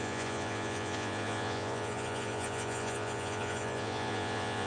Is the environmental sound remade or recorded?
remade